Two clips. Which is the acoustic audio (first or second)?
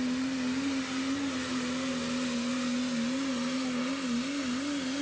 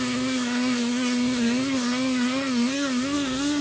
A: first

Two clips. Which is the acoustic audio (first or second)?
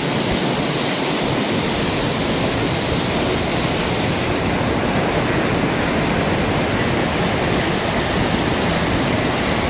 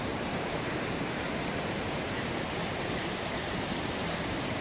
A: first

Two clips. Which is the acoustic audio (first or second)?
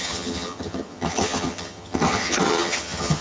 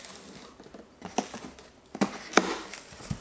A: second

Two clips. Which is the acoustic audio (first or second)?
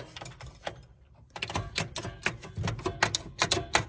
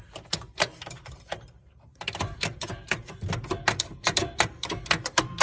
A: first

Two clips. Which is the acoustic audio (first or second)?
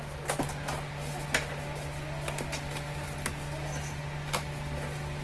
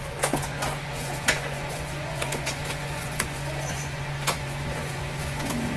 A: first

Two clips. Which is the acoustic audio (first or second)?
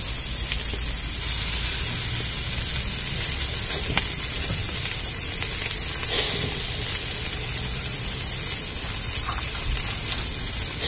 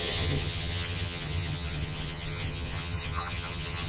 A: first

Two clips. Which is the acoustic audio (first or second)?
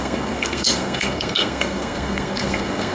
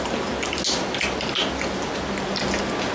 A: second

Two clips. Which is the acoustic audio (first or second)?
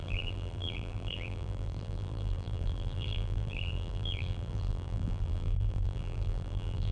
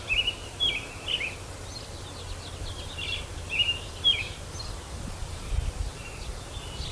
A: second